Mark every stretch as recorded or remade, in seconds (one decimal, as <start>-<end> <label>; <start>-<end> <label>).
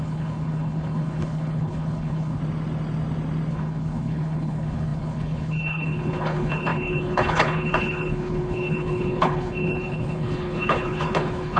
0.0-2.4 remade; 2.4-3.5 recorded; 3.5-11.6 remade